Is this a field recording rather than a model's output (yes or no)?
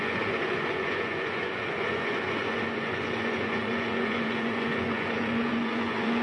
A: no